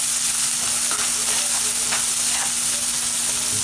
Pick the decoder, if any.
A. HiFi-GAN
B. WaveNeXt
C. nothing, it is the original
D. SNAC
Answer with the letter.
C